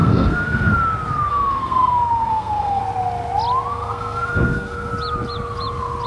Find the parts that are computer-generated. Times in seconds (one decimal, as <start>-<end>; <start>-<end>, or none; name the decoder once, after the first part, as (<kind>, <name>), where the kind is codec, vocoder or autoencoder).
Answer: 0.0-0.7 (codec, SNAC); 1.3-2.8; 3.7-4.9